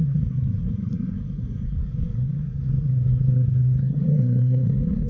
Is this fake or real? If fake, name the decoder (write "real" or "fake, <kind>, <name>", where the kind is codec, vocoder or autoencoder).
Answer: fake, codec, SNAC